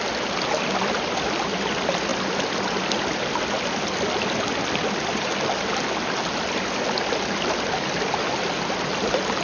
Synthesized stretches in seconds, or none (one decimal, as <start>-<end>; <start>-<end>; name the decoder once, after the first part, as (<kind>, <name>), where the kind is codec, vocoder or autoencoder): none